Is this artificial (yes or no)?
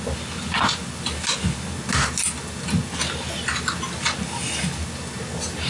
no